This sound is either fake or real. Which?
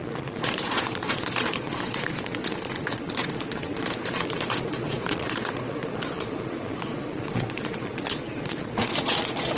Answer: fake